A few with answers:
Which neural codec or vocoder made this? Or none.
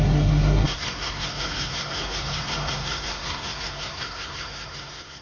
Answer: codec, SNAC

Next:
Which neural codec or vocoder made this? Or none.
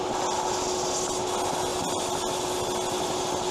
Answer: none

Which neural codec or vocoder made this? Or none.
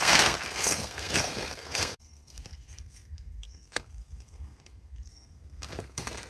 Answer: codec, SNAC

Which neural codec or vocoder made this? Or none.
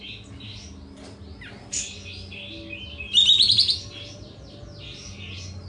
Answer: none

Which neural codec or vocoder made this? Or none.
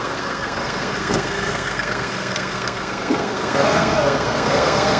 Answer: codec, SNAC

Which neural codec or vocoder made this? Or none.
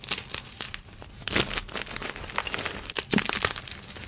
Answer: none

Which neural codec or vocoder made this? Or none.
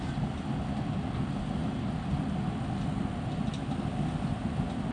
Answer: none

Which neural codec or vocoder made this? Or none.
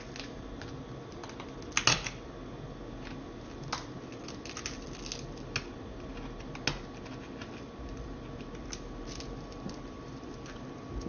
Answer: none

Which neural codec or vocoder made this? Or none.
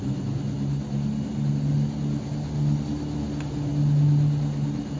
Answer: none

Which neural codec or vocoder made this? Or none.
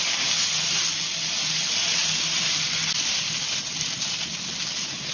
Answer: none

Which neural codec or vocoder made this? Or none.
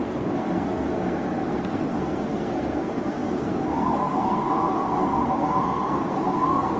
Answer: codec, SNAC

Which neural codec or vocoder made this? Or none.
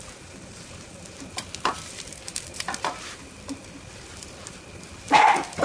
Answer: none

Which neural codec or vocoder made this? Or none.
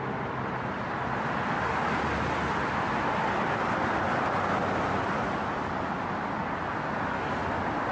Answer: none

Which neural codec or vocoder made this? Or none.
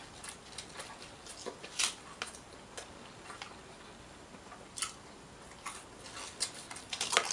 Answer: none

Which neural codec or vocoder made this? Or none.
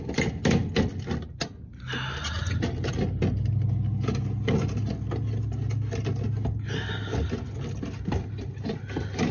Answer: none